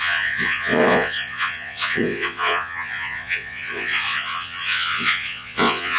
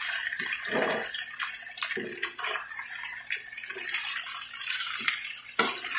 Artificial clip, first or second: first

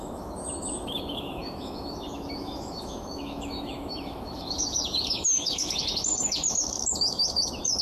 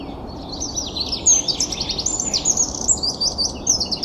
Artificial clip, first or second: first